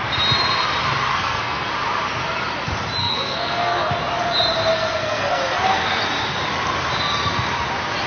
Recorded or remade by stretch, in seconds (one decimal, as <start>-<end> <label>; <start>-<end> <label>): 0.0-1.1 recorded; 1.1-1.7 remade; 1.7-3.0 recorded; 3.0-3.9 remade; 3.9-4.7 recorded; 4.7-6.0 remade; 6.0-8.1 recorded